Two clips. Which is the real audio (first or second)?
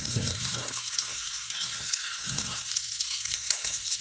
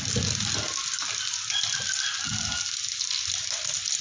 second